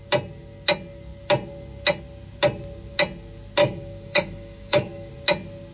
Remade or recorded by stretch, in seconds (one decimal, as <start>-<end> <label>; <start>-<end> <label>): 0.0-3.6 recorded; 3.6-5.1 remade; 5.1-5.7 recorded